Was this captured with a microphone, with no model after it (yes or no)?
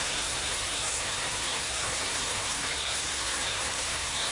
no